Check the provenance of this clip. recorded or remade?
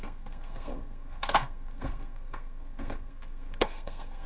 remade